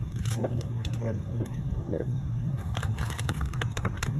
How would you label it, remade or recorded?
remade